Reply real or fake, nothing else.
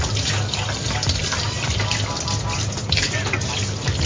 real